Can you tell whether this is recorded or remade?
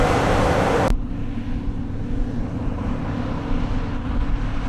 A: recorded